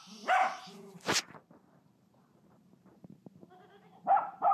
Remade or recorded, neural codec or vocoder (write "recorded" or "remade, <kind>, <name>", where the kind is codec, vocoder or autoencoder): remade, vocoder, BigVGAN v2